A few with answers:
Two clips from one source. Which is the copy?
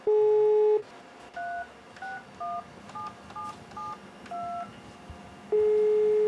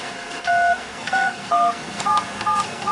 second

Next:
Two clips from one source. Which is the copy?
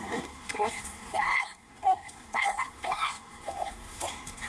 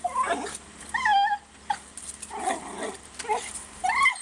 first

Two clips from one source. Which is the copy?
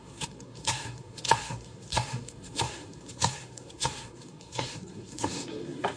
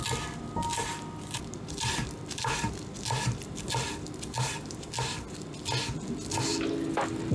first